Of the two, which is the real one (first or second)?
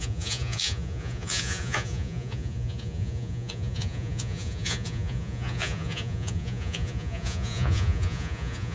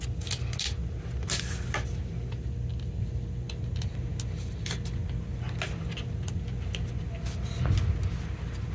second